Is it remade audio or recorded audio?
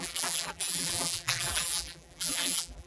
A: remade